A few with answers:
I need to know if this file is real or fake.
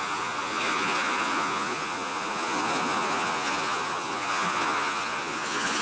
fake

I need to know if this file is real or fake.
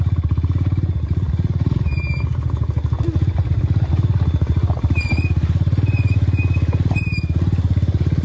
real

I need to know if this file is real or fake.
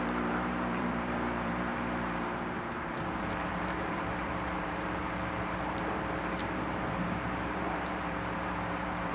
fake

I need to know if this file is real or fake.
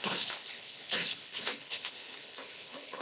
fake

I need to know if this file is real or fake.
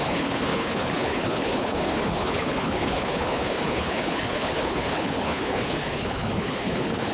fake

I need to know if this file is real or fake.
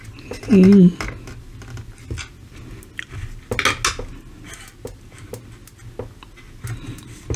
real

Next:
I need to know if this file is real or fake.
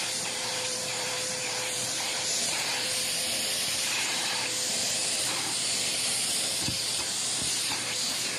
fake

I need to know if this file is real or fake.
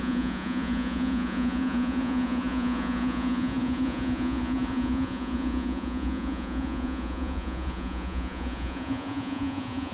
fake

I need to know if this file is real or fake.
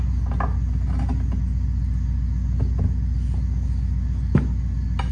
real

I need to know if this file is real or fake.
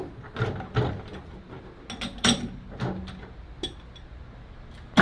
real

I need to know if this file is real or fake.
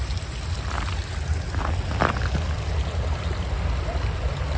real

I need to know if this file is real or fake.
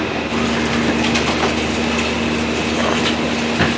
real